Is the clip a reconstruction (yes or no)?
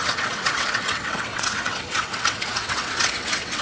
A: yes